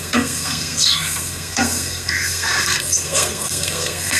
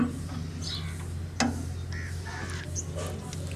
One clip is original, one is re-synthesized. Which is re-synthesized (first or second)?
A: first